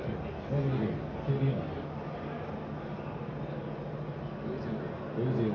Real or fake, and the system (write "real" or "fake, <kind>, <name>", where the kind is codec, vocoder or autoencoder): real